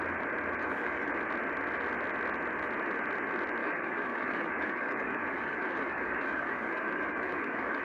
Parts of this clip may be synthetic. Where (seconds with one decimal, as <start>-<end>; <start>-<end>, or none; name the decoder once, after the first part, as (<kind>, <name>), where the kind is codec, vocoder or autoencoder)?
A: 0.6-1.1 (codec, DAC); 3.6-7.8

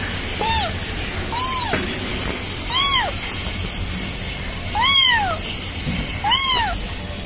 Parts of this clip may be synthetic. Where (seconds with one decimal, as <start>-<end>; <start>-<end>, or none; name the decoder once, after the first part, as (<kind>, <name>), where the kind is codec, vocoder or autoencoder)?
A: none

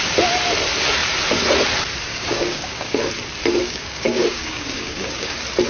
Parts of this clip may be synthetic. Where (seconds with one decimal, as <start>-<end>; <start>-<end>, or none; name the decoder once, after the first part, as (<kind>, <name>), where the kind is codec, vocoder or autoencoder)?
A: 2.1-3.0 (codec, DAC); 3.6-5.3

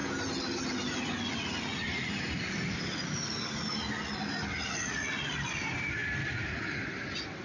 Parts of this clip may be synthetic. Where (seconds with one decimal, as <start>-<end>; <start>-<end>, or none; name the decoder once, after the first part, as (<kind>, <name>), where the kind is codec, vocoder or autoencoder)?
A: none

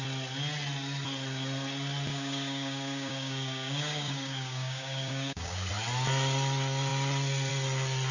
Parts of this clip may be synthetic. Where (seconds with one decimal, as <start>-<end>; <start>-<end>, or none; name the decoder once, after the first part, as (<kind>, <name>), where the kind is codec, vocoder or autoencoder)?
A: 2.1-5.7 (codec, DAC)

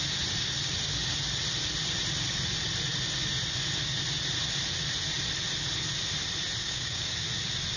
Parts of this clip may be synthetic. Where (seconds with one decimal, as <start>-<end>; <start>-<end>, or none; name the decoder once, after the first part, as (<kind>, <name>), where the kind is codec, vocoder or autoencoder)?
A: 6.6-7.1 (codec, DAC)

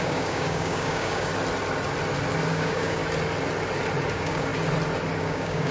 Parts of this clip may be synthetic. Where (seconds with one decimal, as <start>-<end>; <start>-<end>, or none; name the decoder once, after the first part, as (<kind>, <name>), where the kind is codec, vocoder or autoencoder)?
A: 0.0-1.3 (codec, DAC); 2.5-3.0; 4.1-4.5; 5.2-5.7